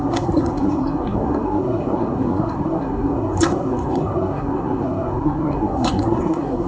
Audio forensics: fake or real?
fake